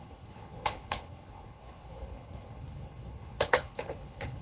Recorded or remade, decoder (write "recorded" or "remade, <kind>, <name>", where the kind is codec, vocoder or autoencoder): remade, codec, HILCodec